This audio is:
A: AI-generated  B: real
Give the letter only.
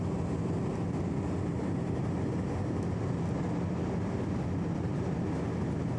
B